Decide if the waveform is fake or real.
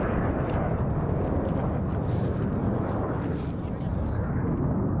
real